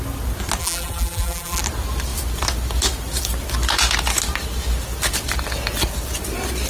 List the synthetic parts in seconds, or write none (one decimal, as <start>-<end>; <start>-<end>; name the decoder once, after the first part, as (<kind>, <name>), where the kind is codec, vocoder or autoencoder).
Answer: 0.6-1.6 (vocoder, BigVGAN v2)

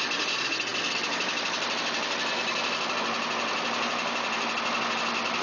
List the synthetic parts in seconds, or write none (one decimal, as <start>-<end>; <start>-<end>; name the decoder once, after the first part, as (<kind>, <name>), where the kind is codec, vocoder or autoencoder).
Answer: 0.7-3.0 (vocoder, BigVGAN v2)

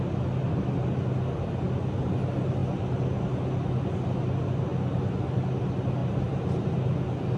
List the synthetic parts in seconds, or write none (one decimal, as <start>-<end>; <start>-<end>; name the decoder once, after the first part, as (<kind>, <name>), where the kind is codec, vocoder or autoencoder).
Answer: 6.0-6.7 (vocoder, BigVGAN v2)

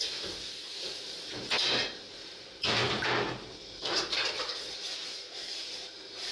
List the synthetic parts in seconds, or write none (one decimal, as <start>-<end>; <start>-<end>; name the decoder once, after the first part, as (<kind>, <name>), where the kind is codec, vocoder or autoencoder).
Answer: 0.0-2.8 (vocoder, BigVGAN v2); 3.6-6.3